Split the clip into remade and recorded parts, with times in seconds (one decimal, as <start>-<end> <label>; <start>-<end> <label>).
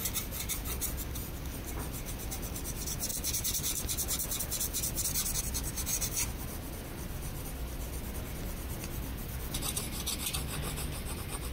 0.0-5.9 recorded; 5.9-6.4 remade; 6.4-11.5 recorded